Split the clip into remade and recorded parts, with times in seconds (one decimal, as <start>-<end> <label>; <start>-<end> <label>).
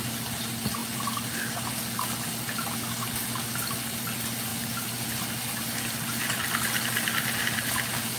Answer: 0.0-8.2 recorded